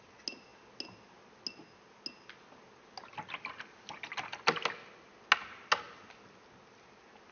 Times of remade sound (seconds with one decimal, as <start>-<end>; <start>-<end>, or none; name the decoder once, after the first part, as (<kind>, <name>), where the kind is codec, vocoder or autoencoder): none